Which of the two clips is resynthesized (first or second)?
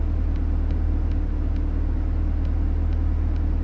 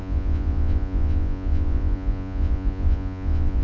second